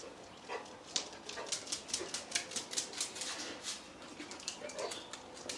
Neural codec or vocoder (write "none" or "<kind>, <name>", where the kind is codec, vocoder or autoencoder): none